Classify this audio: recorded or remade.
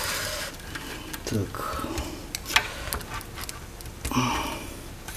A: recorded